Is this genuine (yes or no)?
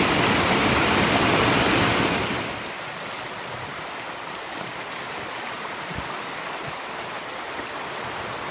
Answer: yes